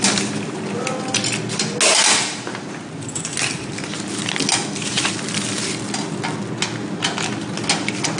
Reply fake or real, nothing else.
real